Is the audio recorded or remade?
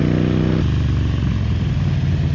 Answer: recorded